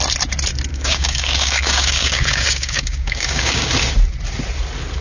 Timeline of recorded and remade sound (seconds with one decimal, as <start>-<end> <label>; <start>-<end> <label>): 0.0-0.7 recorded; 0.7-3.7 remade; 3.7-5.0 recorded